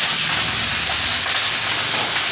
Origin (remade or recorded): recorded